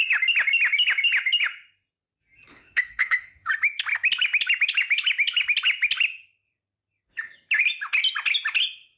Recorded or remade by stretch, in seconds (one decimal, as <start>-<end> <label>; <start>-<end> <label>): 0.0-2.5 recorded; 2.5-3.5 remade; 3.5-9.0 recorded